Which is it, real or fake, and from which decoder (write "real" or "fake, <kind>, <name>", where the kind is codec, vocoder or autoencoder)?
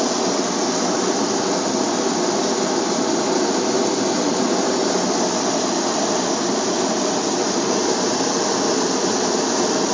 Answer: real